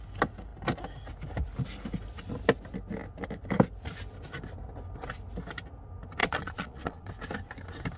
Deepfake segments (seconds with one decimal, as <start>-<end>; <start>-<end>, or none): 6.2-7.1